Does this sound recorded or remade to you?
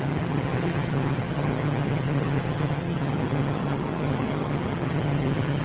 remade